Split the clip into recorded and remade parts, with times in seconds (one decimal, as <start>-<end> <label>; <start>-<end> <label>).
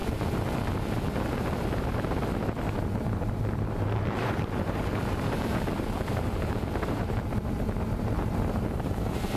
0.0-1.1 recorded; 1.1-9.4 remade